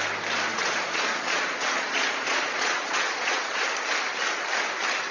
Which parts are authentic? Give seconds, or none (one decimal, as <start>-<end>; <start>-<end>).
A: 0.0-0.5; 3.6-5.1